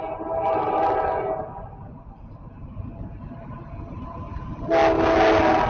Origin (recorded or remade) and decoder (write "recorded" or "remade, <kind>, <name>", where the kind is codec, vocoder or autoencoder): recorded